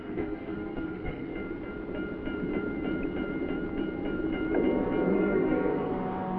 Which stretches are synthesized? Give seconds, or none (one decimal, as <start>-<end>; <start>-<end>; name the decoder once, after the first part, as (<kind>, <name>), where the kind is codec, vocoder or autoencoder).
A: 0.0-1.3 (codec, SNAC); 5.1-6.4